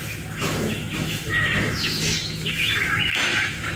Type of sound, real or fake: fake